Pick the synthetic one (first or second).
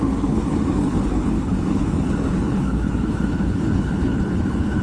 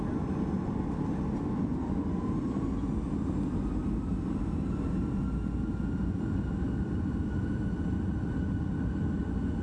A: first